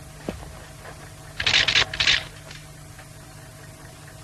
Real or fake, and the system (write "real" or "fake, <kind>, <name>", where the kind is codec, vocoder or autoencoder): real